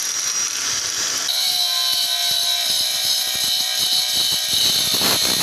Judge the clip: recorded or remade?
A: recorded